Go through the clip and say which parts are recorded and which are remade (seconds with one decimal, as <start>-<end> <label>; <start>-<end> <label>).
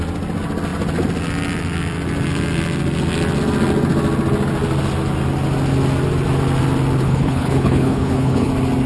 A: 0.0-7.0 recorded; 7.0-8.5 remade; 8.5-8.9 recorded